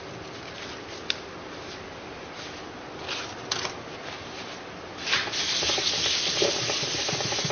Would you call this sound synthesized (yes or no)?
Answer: no